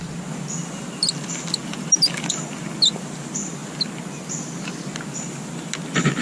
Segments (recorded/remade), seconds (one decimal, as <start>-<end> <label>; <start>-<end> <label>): 0.0-6.2 recorded